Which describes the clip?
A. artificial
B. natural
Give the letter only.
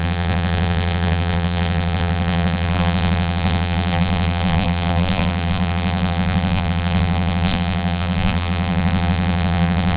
A